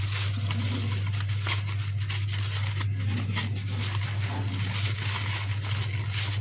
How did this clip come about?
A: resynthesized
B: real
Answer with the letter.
B